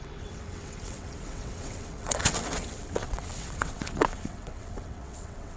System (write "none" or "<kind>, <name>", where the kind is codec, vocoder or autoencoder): vocoder, WaveNeXt